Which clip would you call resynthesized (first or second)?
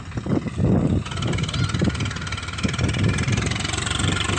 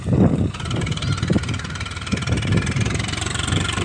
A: second